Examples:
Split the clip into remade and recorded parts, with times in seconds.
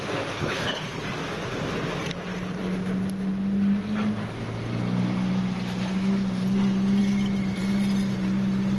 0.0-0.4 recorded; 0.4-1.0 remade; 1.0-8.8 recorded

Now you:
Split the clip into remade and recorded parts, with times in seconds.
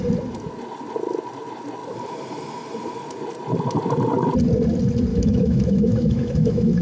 0.0-5.1 recorded; 5.1-6.8 remade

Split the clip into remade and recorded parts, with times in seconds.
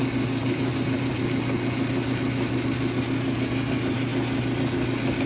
0.0-0.4 recorded; 0.4-1.1 remade; 1.1-5.3 recorded